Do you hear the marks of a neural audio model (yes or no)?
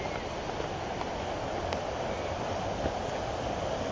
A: no